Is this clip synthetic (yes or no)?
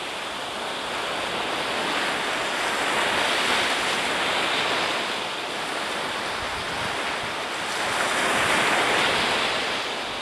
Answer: no